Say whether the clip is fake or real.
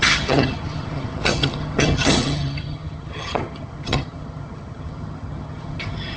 fake